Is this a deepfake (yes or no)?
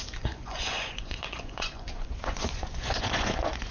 yes